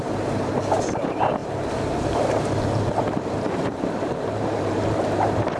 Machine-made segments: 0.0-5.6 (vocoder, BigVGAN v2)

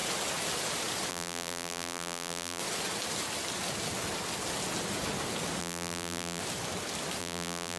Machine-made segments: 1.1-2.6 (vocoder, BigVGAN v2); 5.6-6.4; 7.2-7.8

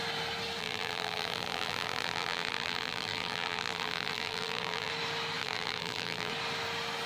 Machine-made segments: 0.6-4.9 (vocoder, BigVGAN v2); 5.4-6.3

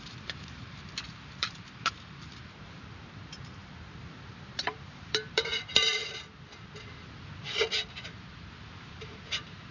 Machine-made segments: 0.0-6.0 (vocoder, BigVGAN v2); 7.6-9.7